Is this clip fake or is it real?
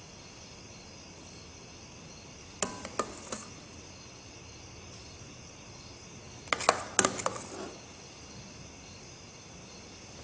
real